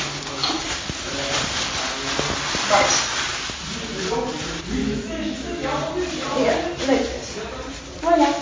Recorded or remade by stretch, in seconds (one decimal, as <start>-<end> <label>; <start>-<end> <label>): 0.0-4.8 recorded; 4.8-5.5 remade; 5.5-8.4 recorded